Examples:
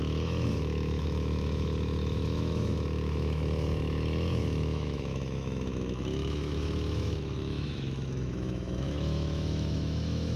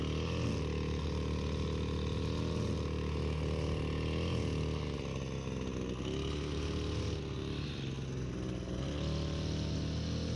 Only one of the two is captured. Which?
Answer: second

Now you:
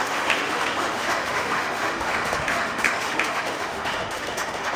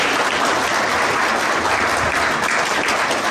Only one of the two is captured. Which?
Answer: second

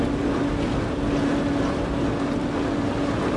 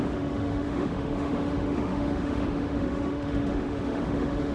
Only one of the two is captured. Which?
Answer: first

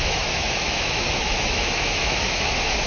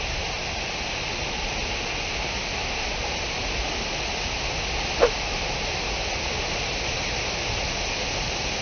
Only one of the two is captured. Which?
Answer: second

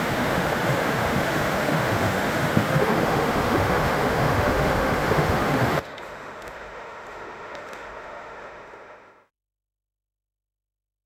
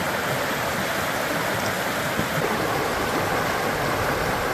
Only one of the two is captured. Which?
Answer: second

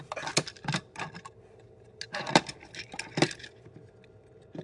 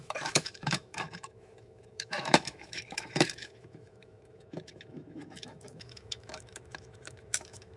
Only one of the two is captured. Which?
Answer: first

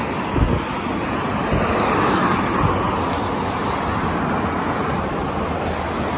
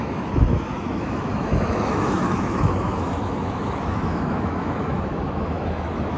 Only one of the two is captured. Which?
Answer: first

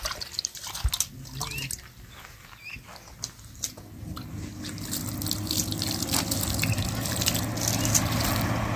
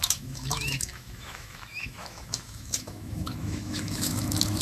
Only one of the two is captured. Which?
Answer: first